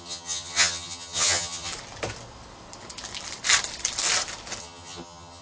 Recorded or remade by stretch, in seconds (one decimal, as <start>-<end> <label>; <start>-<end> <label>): 0.0-1.7 remade; 1.7-4.6 recorded; 4.6-5.4 remade

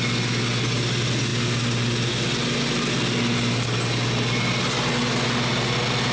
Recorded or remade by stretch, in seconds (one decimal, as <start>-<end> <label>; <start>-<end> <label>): 0.0-6.1 recorded

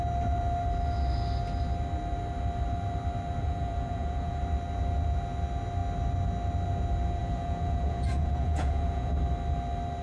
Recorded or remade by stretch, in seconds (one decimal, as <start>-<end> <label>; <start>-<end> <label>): 0.0-3.4 recorded; 3.4-4.4 remade; 4.4-7.2 recorded; 7.2-9.1 remade; 9.1-10.0 recorded

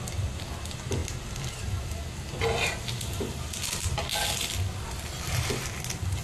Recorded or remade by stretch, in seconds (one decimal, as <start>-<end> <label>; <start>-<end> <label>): 0.0-6.2 recorded

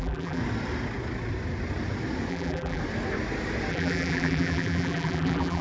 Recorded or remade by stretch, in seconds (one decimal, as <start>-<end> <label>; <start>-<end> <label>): 0.0-0.4 remade; 0.4-2.3 recorded; 2.3-2.8 remade; 2.8-3.7 recorded; 3.7-5.6 remade